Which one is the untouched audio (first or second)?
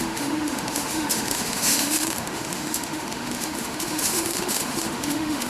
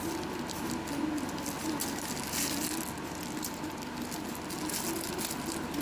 second